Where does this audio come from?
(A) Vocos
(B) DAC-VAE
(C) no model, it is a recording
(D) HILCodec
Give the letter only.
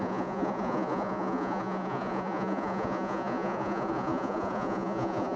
A